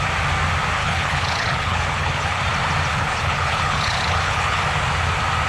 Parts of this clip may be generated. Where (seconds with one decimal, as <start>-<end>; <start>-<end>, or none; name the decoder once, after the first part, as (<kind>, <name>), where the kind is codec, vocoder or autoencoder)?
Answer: 0.8-2.4 (codec, HILCodec); 2.9-4.6